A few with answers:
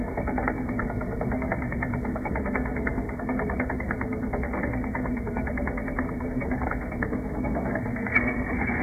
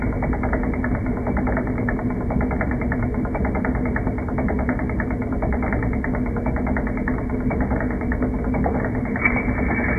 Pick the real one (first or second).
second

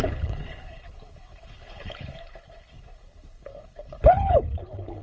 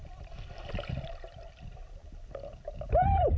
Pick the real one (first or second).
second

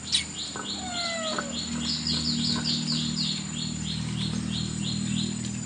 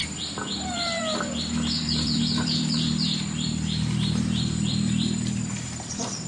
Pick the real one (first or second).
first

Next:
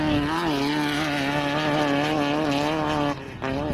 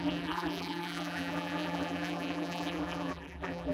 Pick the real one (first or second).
first